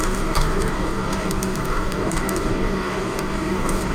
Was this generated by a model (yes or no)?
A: yes